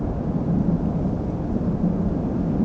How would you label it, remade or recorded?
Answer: recorded